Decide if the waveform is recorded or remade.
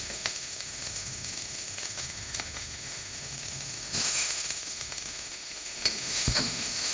remade